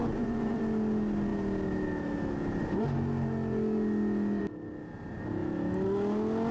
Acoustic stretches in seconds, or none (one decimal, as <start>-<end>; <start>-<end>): 0.6-6.5